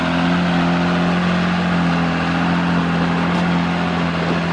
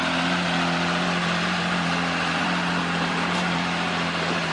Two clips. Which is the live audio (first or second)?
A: first